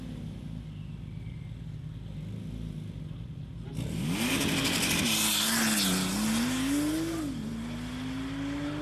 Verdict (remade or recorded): recorded